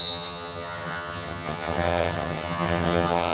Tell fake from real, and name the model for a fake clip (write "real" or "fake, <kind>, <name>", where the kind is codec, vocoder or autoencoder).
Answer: fake, vocoder, HiFi-GAN